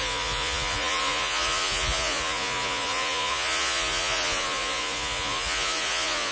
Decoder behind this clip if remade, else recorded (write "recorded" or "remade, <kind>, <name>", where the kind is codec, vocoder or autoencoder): remade, vocoder, Vocos